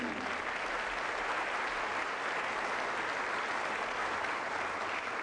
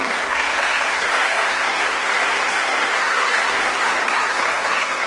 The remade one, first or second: second